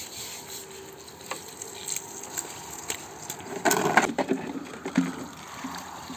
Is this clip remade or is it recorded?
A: recorded